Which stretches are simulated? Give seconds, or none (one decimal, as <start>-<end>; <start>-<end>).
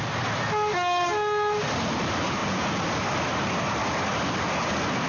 none